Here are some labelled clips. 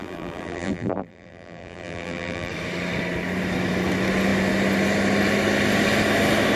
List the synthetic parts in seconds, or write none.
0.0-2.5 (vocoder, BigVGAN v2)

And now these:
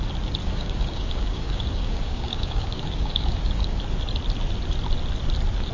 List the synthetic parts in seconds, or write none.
0.4-3.8 (codec, DAC)

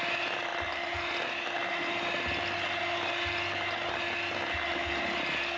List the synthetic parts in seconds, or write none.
none

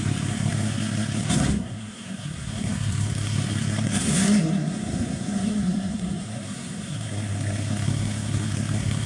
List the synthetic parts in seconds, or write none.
0.0-9.1 (codec, SNAC)

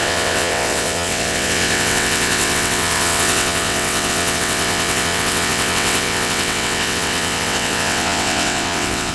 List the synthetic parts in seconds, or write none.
0.0-9.1 (vocoder, WaveNeXt)

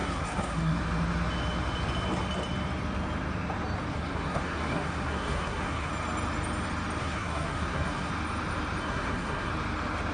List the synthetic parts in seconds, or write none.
0.0-0.8 (codec, SNAC); 3.9-5.9; 7.0-8.1; 8.8-9.5